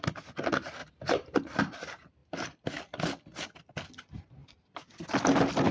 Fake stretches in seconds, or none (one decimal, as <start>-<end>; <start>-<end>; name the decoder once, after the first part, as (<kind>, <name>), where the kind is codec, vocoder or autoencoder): 0.8-1.6 (vocoder, BigVGAN v2)